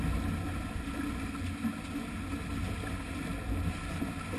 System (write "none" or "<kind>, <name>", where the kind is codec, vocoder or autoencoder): none